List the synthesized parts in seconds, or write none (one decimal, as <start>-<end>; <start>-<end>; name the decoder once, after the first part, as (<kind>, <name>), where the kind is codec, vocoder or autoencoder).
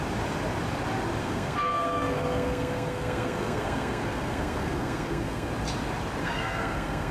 1.2-5.5 (codec, SNAC); 6.2-7.1